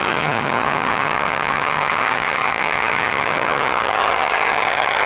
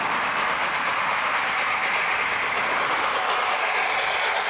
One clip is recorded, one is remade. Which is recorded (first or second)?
second